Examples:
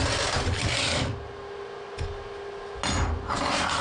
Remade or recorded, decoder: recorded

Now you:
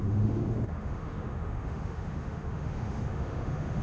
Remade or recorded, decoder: remade, autoencoder, DAC-VAE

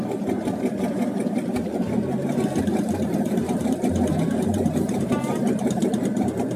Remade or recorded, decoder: remade, vocoder, BigVGAN v2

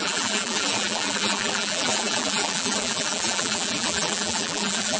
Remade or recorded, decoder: remade, vocoder, BigVGAN v2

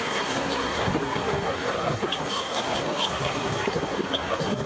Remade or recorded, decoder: remade, codec, SNAC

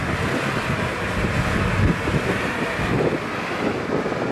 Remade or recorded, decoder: recorded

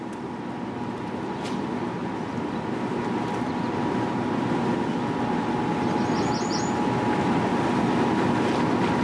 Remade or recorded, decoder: recorded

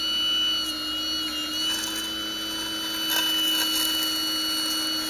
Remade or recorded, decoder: recorded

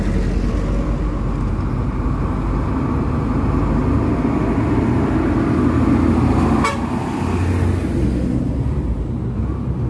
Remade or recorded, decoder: recorded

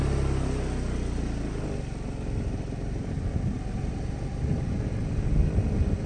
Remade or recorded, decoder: recorded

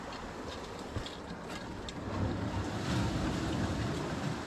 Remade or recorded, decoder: recorded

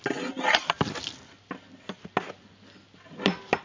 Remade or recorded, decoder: recorded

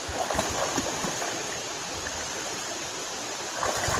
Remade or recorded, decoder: recorded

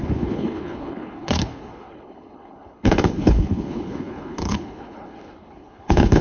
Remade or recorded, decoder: remade, codec, HILCodec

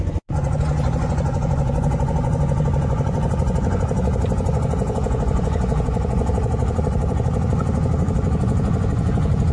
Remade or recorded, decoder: remade, vocoder, Vocos